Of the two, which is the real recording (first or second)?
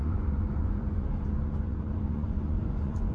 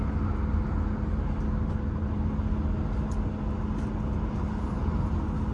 second